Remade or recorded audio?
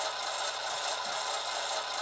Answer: recorded